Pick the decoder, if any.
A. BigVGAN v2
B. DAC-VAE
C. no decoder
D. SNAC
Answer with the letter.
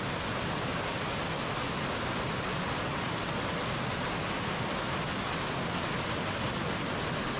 C